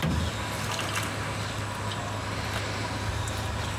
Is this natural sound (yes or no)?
yes